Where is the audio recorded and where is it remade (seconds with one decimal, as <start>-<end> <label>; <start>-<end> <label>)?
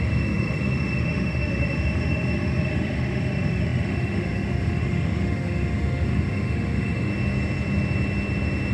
0.0-7.1 remade; 7.1-8.7 recorded